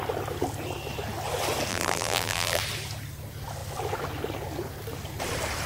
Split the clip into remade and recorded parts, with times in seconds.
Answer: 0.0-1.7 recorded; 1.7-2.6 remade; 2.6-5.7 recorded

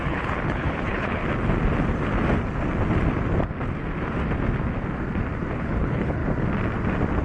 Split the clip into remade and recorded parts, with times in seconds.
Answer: 0.0-1.2 remade; 1.2-5.5 recorded; 5.5-6.2 remade; 6.2-7.2 recorded

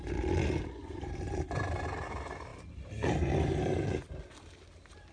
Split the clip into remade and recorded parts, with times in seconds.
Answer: 0.0-0.8 recorded; 0.8-1.7 remade; 1.7-2.5 recorded; 2.5-4.1 remade; 4.1-5.1 recorded

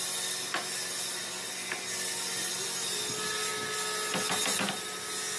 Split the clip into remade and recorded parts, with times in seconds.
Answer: 0.0-5.4 recorded

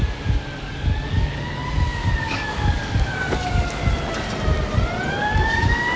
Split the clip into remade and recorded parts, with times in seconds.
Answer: 0.0-0.6 recorded; 0.6-1.6 remade; 1.6-2.2 recorded; 2.2-3.8 remade; 3.8-5.1 recorded; 5.1-6.0 remade

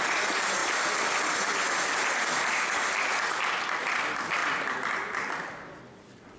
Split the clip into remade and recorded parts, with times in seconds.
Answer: 0.0-6.4 recorded

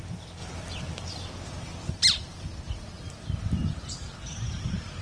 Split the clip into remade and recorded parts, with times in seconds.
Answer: 0.0-5.0 recorded

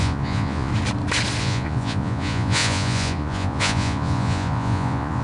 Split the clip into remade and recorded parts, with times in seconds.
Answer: 0.0-0.7 remade; 0.7-1.4 recorded; 1.4-5.2 remade